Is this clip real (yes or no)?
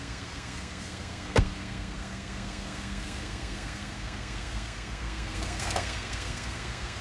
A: no